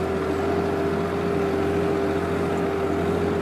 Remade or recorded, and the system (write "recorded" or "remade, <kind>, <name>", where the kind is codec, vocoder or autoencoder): recorded